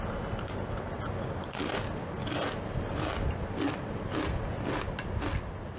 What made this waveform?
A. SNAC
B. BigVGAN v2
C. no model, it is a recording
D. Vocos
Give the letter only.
C